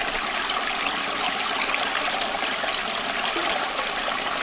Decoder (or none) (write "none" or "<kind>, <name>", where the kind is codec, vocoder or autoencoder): none